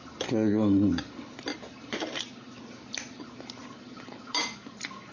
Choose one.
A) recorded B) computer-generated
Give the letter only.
A